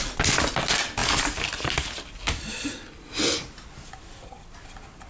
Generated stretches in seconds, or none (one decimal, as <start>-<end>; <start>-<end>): none